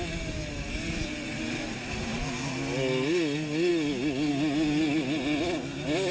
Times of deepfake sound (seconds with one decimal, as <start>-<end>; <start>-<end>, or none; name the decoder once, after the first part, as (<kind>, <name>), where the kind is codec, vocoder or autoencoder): none